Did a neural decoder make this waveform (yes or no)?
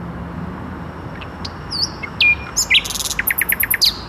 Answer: no